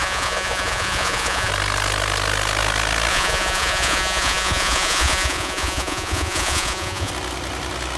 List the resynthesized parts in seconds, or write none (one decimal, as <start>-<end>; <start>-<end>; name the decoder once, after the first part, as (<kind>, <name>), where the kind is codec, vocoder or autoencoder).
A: 0.0-1.5 (vocoder, Vocos); 3.1-7.1